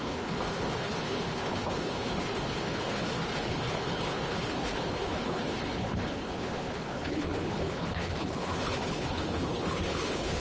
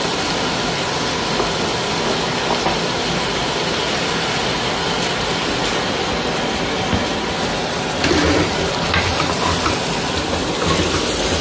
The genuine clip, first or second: second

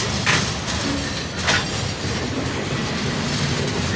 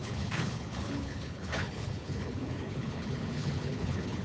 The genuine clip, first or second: first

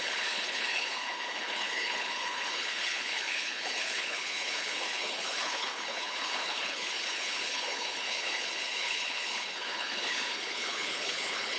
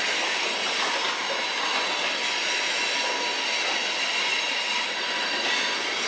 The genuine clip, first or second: second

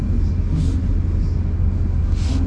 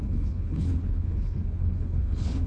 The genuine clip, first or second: first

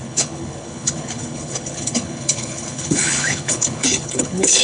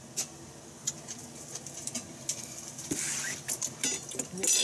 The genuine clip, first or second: second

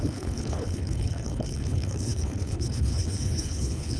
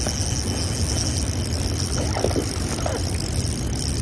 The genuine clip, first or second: second